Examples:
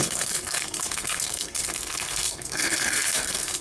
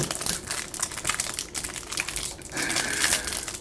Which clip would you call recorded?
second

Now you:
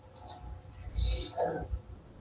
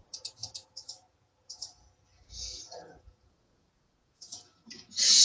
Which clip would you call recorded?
first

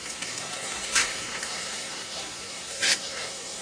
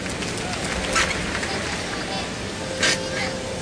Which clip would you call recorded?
second